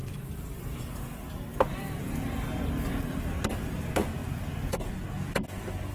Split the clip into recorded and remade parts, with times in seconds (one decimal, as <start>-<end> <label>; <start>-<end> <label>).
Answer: 0.0-0.6 remade; 0.6-5.9 recorded